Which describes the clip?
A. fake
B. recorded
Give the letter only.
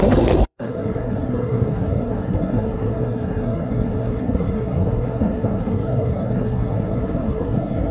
A